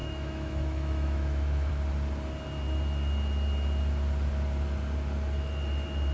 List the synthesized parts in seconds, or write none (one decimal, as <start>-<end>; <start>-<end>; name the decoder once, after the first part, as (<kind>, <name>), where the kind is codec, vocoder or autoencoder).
0.0-1.7 (autoencoder, DAC-VAE)